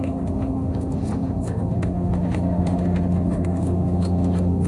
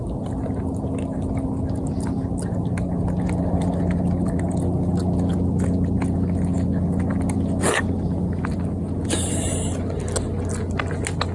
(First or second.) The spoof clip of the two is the first